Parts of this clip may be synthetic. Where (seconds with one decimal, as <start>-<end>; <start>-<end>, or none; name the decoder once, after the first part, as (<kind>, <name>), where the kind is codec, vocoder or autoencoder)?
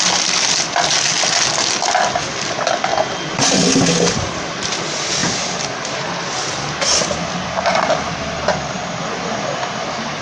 none